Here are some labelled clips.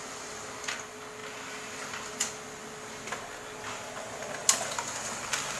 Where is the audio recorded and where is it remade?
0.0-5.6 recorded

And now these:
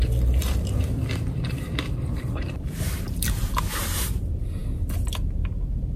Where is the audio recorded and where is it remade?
0.0-0.4 recorded; 0.4-4.0 remade; 4.0-4.6 recorded; 4.6-6.0 remade

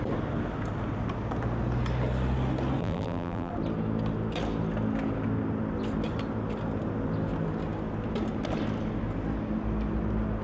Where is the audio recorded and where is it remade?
0.0-2.8 recorded; 2.8-3.5 remade; 3.5-10.4 recorded